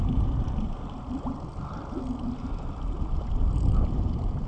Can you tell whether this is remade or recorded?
recorded